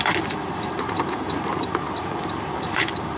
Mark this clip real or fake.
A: fake